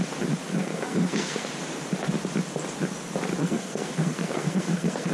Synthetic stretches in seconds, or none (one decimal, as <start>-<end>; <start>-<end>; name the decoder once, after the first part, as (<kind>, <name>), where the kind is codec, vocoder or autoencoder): 0.5-1.5 (codec, SNAC); 3.4-5.1